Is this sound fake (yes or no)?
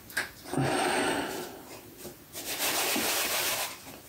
no